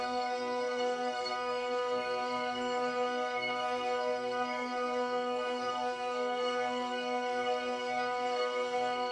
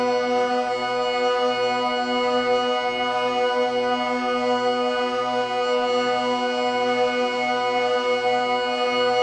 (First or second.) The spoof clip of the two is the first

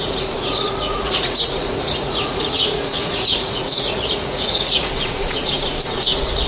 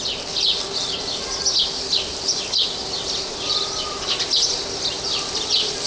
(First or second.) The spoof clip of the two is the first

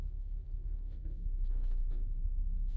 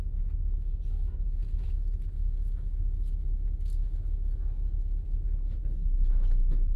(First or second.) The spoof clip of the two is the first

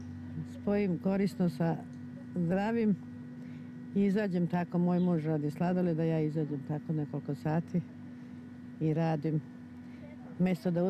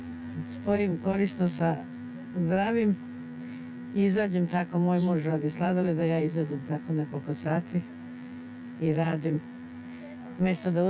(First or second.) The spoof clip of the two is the second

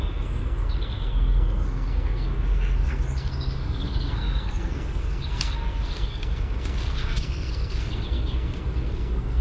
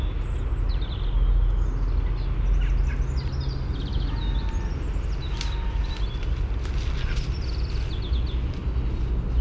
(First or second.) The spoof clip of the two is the first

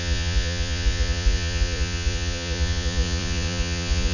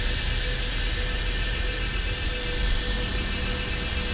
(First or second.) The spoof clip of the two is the first